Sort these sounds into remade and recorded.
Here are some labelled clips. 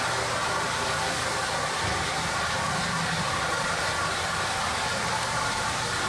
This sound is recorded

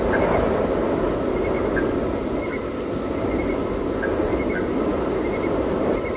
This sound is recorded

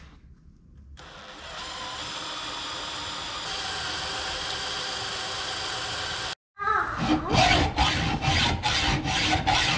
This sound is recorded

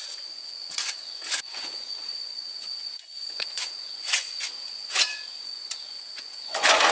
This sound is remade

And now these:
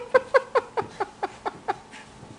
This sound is recorded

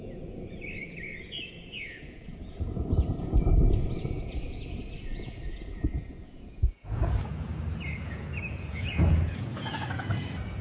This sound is remade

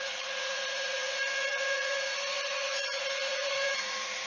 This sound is remade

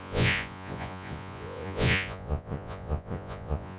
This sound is remade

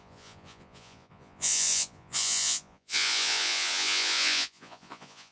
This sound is remade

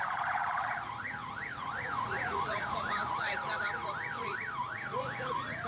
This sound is remade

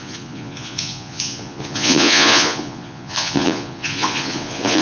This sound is remade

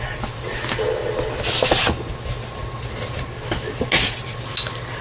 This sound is recorded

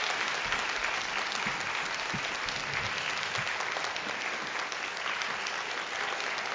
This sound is recorded